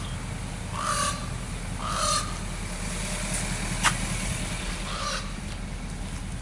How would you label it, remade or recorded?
recorded